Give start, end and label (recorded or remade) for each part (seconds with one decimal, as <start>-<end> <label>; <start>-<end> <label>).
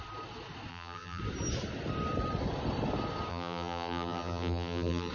0.0-0.7 recorded; 0.7-1.2 remade; 1.2-3.3 recorded; 3.3-5.1 remade